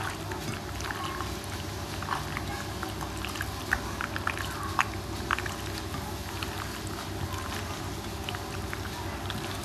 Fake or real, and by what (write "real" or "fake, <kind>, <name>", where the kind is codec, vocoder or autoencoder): real